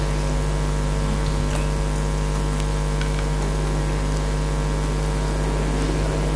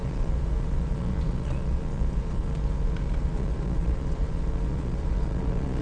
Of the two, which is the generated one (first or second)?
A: second